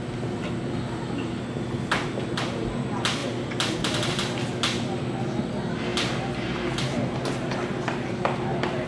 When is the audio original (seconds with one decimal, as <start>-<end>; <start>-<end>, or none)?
0.0-8.9